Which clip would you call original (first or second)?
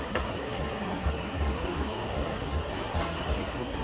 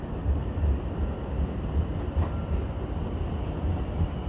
second